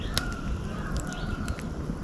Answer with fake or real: real